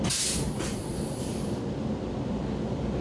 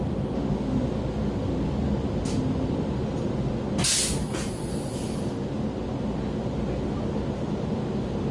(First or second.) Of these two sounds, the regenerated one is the first